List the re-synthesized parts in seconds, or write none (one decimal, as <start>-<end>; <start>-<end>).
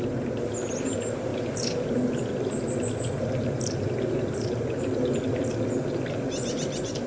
none